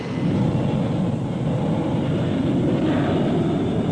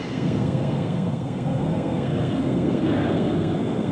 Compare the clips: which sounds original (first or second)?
first